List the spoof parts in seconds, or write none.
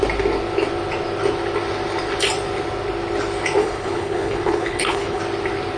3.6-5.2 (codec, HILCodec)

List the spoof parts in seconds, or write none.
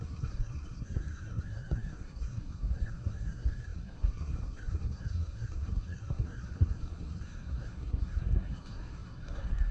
0.0-9.7 (codec, SNAC)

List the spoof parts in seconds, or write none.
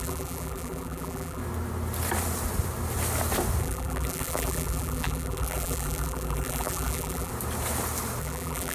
0.0-1.4 (vocoder, BigVGAN v2); 3.6-7.3; 8.2-8.7